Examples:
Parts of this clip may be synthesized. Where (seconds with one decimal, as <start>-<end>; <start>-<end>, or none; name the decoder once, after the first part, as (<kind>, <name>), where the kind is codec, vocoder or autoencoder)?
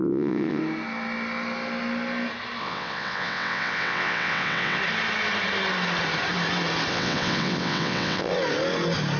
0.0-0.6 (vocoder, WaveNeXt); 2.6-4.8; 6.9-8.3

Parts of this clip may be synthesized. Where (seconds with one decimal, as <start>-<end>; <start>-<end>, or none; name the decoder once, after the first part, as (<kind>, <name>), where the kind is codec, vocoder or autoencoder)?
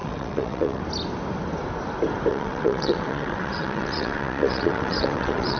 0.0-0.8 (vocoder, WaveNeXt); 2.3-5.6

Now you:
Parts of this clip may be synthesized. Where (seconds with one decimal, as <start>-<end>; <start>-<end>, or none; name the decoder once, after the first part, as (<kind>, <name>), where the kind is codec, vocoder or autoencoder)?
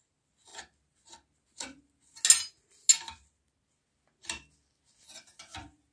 none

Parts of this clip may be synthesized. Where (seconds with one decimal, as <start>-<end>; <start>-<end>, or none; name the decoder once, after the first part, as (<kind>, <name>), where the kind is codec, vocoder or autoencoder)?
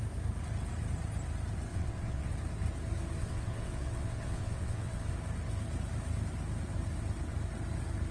1.7-2.3 (vocoder, WaveNeXt); 3.2-5.1